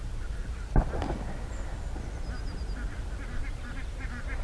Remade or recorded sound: recorded